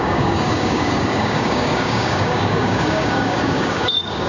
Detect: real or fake fake